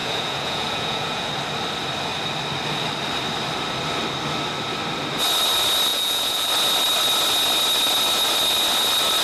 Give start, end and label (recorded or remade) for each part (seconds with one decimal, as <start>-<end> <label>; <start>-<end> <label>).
0.0-1.3 remade; 1.3-5.9 recorded; 5.9-6.5 remade; 6.5-9.2 recorded